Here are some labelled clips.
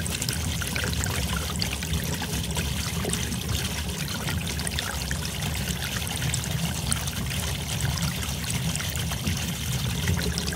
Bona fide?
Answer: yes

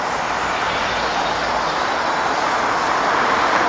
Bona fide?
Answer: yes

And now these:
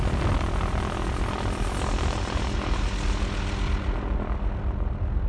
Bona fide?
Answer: yes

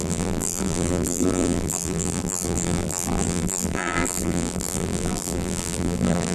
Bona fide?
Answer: no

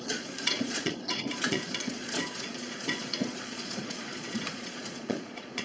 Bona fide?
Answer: no